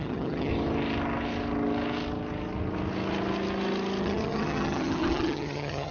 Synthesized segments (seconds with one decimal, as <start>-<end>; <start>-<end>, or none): 0.0-0.5; 4.0-5.9